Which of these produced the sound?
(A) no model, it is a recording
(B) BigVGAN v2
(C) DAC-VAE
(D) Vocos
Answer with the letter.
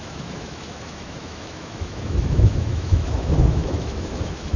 C